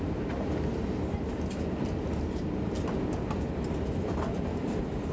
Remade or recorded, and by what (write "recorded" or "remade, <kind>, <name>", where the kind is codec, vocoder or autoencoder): recorded